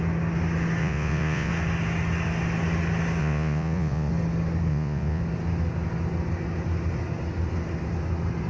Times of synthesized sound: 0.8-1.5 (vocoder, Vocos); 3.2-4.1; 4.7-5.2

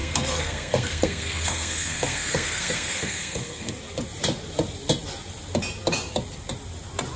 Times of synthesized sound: 0.0-3.7 (codec, SNAC)